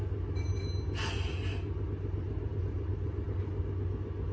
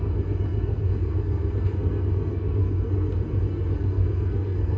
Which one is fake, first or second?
second